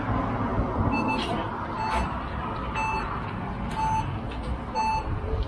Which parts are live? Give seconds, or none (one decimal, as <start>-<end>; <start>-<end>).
0.0-5.5